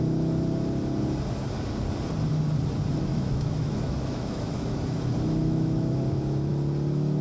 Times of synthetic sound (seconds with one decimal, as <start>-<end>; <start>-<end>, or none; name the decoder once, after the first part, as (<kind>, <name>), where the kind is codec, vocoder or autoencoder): 3.1-6.5 (autoencoder, DAC-VAE)